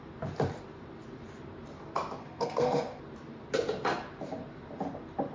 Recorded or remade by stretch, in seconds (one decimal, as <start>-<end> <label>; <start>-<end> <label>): 0.0-2.2 recorded; 2.2-3.0 remade; 3.0-5.3 recorded